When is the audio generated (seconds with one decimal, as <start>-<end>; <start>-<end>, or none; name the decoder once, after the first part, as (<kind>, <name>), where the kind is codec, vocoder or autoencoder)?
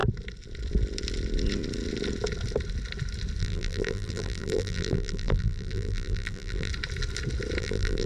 3.4-6.7 (vocoder, BigVGAN v2); 7.6-8.1